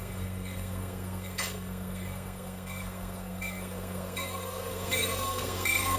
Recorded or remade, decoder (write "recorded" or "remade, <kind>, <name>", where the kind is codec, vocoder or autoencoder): remade, codec, SNAC